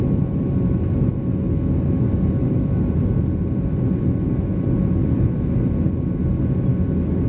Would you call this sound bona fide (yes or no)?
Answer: yes